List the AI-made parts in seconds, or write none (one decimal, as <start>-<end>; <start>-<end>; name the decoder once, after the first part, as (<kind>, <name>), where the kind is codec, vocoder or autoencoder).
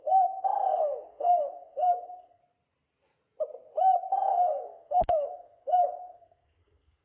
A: 0.0-2.4 (codec, SNAC); 4.1-7.0